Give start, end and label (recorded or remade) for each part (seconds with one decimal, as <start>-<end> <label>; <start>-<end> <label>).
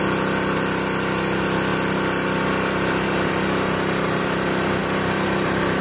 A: 0.0-5.8 recorded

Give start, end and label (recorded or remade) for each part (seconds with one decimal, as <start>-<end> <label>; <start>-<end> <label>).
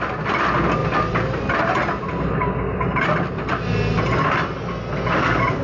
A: 0.0-5.6 recorded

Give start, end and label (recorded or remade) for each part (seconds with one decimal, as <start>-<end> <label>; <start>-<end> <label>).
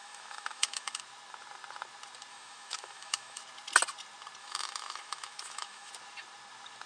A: 0.0-1.0 remade; 1.0-2.3 recorded; 2.3-3.4 remade; 3.4-4.4 recorded; 4.4-5.9 remade; 5.9-6.9 recorded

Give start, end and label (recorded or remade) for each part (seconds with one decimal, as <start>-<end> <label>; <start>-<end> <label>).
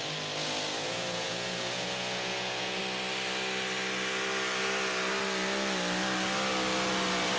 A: 0.0-0.7 recorded; 0.7-2.8 remade; 2.8-7.4 recorded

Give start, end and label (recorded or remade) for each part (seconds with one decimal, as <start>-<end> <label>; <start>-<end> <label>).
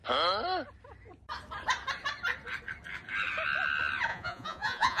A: 0.0-4.1 recorded; 4.1-5.0 remade